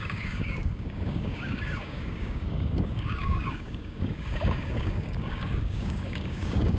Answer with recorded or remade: remade